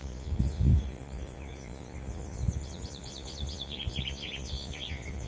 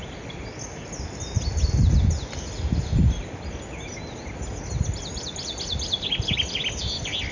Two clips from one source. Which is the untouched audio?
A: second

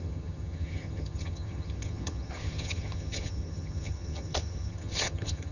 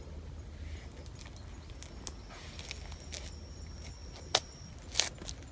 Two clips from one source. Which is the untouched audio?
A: second